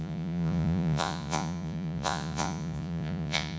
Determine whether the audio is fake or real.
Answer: fake